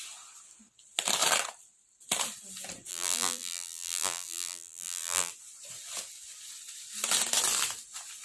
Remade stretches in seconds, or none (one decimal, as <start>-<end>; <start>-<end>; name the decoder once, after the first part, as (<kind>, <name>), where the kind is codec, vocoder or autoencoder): 2.9-5.3 (vocoder, BigVGAN v2)